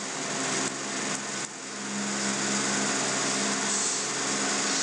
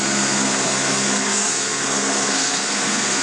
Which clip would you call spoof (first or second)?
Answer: second